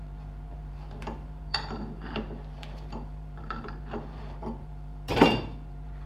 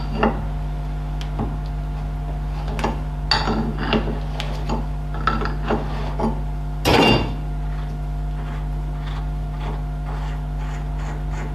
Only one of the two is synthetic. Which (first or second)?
first